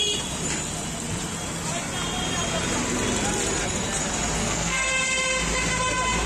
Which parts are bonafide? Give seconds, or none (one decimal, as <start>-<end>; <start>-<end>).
0.0-4.4; 4.9-6.3